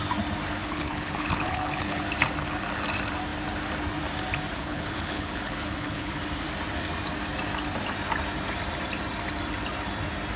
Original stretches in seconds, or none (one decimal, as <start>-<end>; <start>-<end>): 0.0-0.6; 2.0-4.5; 6.2-10.4

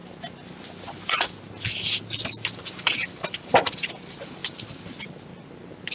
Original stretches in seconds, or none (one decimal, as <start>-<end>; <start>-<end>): 0.0-5.9

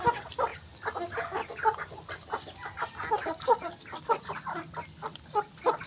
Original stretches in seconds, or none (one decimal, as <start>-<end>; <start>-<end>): 0.0-5.9

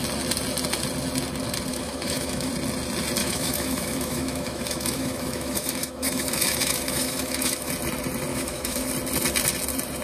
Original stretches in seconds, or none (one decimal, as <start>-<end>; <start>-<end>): 0.0-1.7; 2.5-3.2; 7.7-8.3; 8.9-10.0

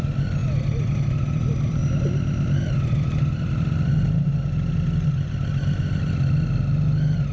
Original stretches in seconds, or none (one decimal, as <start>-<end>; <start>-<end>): 0.0-7.3

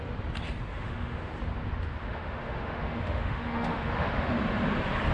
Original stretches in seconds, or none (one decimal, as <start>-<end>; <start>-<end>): 0.0-0.7; 1.3-2.0; 4.3-5.1

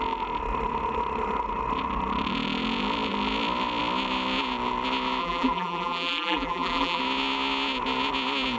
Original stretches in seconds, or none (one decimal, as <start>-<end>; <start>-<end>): 0.0-5.2; 7.0-8.6